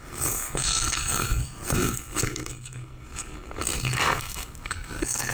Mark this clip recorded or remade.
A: remade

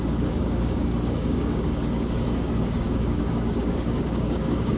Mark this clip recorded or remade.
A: remade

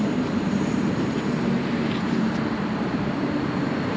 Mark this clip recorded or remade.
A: remade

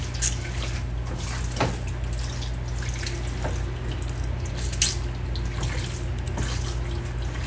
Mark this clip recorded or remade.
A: recorded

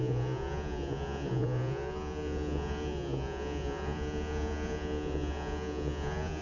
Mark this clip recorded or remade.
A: remade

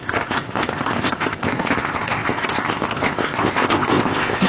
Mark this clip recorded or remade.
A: remade